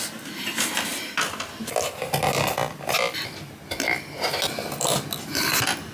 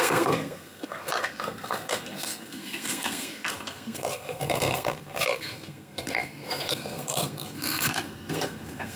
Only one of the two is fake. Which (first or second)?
second